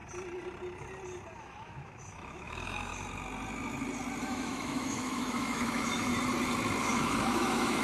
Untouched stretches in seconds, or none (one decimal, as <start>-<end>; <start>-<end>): 0.0-1.4; 2.9-4.2; 6.1-6.8